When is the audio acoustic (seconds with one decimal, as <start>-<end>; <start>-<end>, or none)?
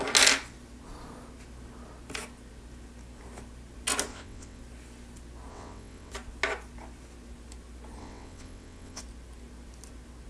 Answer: 0.0-4.1; 4.6-5.5; 6.1-8.0; 9.0-10.3